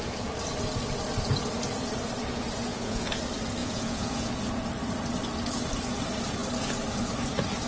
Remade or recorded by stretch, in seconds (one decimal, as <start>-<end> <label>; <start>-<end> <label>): 0.0-2.7 recorded; 2.7-3.2 remade; 3.2-3.6 recorded; 3.6-4.3 remade; 4.3-7.7 recorded